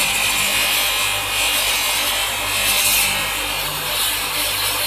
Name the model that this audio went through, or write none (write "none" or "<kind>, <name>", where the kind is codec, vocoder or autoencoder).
none